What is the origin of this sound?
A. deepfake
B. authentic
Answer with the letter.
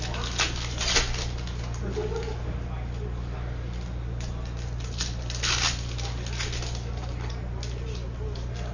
B